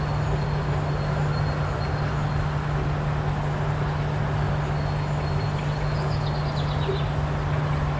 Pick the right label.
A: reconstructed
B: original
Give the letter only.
B